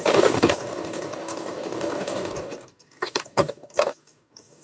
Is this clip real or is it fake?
fake